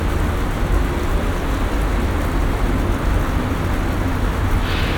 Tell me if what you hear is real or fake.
real